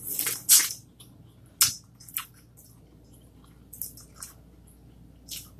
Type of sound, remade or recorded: recorded